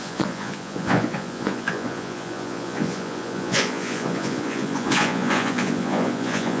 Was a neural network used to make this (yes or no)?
yes